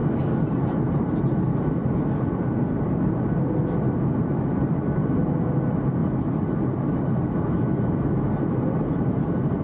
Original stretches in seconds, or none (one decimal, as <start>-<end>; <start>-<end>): 3.3-9.6